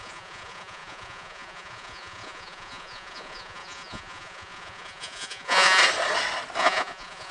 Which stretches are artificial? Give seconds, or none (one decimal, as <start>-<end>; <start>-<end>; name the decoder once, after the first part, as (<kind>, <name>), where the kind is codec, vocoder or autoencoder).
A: 0.0-5.8 (vocoder, Vocos); 6.6-7.3